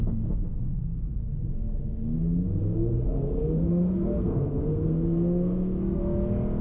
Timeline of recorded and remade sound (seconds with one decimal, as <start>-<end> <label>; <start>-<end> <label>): 0.0-1.2 remade; 1.2-2.6 recorded; 2.6-6.0 remade; 6.0-6.6 recorded